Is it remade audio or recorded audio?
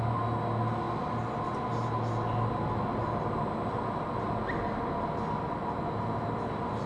recorded